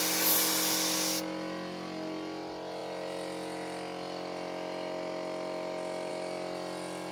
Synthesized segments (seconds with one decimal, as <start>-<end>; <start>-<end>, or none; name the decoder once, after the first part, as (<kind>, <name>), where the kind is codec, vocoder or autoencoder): none